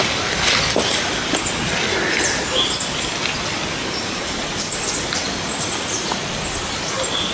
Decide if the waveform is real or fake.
real